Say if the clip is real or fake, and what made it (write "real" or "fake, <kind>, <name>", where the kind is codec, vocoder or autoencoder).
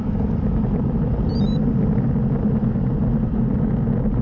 real